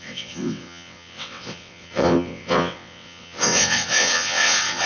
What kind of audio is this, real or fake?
fake